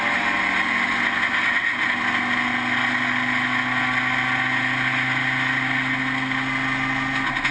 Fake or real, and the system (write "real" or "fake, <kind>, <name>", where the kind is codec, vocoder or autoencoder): real